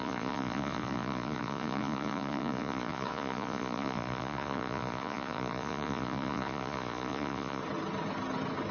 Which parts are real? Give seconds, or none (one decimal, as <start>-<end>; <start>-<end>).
7.6-8.7